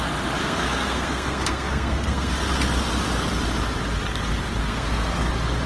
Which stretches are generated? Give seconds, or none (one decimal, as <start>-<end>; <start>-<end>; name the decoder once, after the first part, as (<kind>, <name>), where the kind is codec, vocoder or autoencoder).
0.4-2.3 (codec, SNAC); 4.6-5.3